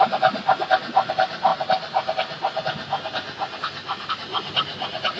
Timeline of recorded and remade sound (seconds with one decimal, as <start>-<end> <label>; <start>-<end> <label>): 0.0-5.2 recorded